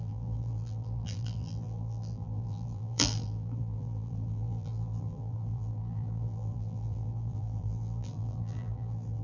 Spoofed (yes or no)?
yes